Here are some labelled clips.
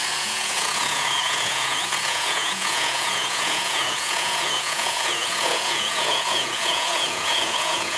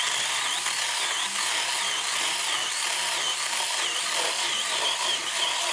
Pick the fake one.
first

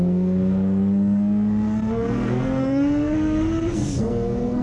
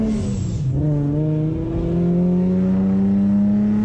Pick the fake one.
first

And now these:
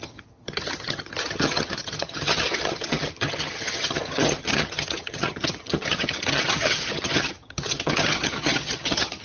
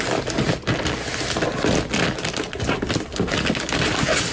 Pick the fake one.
first